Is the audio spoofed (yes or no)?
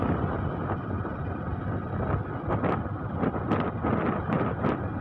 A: no